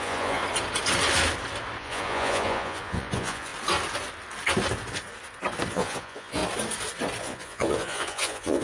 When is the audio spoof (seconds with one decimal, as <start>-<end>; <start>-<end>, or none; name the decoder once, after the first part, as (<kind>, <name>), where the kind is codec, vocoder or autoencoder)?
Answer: 0.0-0.4 (vocoder, Vocos); 1.8-3.5; 5.7-6.4; 7.2-8.6